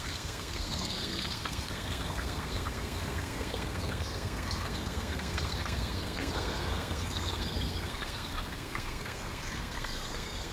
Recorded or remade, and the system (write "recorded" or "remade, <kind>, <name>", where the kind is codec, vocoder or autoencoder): remade, codec, SNAC